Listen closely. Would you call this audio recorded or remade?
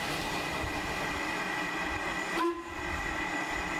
recorded